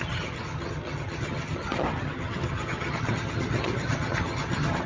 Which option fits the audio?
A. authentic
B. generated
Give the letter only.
B